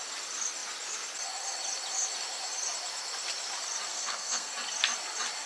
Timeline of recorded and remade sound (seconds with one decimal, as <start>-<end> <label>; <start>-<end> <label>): 0.0-3.9 recorded; 3.9-4.5 remade; 4.5-5.5 recorded